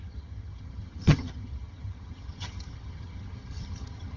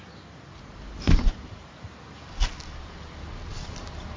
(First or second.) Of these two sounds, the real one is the second